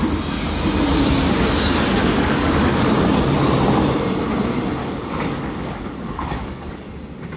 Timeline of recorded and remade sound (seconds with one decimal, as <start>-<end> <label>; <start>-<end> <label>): 0.0-2.0 recorded; 2.0-2.9 remade; 2.9-4.8 recorded; 4.8-6.9 remade; 6.9-7.4 recorded